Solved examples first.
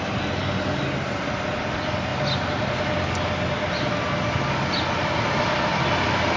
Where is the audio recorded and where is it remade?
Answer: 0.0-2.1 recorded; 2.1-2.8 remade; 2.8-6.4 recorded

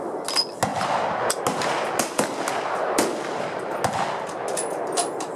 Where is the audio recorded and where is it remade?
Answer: 0.0-5.4 recorded

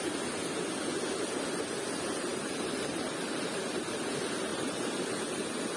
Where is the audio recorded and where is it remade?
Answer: 0.0-2.3 recorded; 2.3-3.6 remade; 3.6-4.5 recorded; 4.5-5.2 remade; 5.2-5.8 recorded

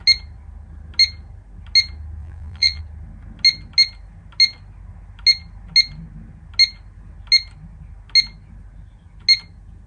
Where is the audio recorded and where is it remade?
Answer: 0.0-2.2 recorded; 2.2-2.8 remade; 2.8-9.9 recorded

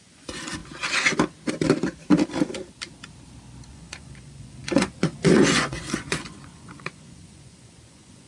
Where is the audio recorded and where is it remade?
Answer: 0.0-0.6 remade; 0.6-3.7 recorded; 3.7-8.3 remade

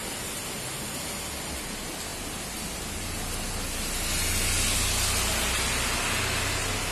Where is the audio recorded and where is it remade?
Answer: 0.0-6.9 recorded

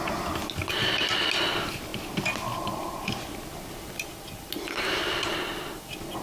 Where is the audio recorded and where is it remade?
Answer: 0.0-6.2 recorded

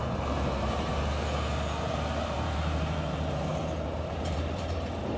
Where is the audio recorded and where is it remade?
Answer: 0.0-0.9 remade; 0.9-2.2 recorded; 2.2-5.2 remade